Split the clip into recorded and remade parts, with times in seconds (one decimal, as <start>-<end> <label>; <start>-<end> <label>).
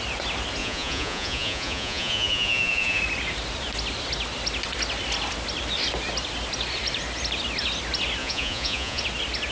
0.0-0.6 recorded; 0.6-3.0 remade; 3.0-8.2 recorded; 8.2-9.0 remade; 9.0-9.5 recorded